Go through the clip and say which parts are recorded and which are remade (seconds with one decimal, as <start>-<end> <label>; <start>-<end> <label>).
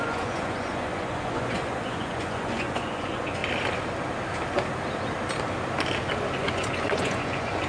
0.0-3.4 remade; 3.4-6.4 recorded; 6.4-7.7 remade